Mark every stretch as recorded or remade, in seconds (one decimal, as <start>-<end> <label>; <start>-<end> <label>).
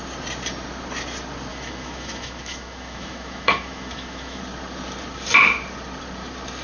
0.0-1.5 recorded; 1.5-4.4 remade; 4.4-6.6 recorded